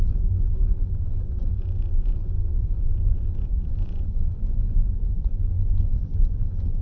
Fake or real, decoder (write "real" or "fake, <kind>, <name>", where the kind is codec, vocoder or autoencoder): fake, vocoder, Vocos